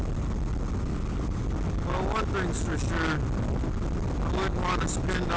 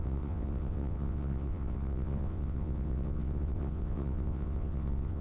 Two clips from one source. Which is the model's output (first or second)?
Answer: second